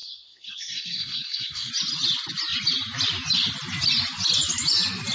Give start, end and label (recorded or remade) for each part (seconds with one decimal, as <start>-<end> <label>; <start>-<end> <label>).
0.0-1.7 remade; 1.7-5.1 recorded